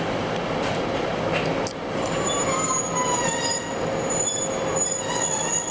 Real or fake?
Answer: real